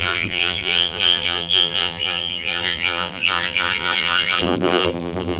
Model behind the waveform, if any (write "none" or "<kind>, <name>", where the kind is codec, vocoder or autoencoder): vocoder, BigVGAN v2